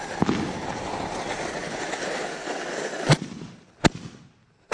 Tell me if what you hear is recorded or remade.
recorded